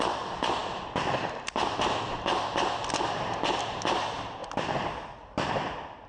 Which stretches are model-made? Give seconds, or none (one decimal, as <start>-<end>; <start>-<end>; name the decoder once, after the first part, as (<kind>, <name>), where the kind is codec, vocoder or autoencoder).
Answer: 0.6-2.3 (vocoder, BigVGAN v2); 4.4-6.1